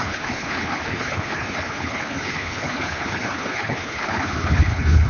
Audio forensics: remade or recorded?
remade